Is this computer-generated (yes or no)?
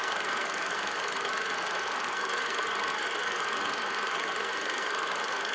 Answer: yes